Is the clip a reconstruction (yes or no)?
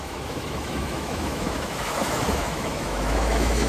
yes